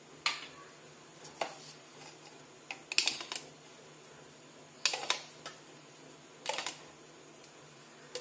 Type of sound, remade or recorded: recorded